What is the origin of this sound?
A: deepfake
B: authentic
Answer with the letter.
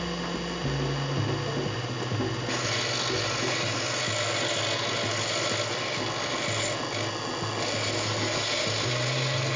B